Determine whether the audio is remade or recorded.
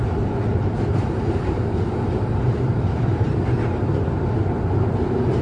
recorded